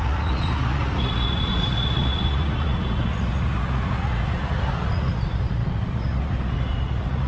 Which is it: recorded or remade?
remade